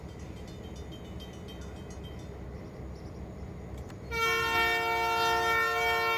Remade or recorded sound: recorded